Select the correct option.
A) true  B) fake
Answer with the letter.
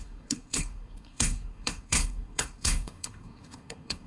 B